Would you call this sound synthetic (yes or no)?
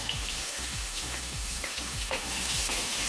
yes